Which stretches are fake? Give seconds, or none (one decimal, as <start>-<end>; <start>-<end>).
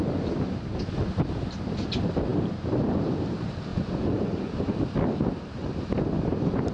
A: 3.7-4.5